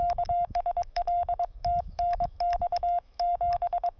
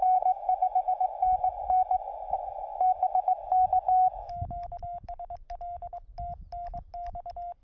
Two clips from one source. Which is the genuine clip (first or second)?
second